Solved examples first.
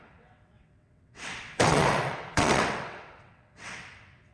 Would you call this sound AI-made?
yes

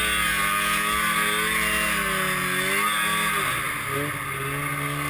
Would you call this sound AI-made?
no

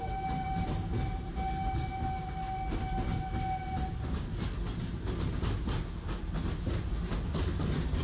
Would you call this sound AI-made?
no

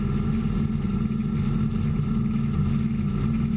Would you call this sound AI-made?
no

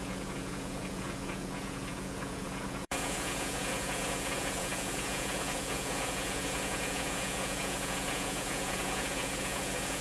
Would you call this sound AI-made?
yes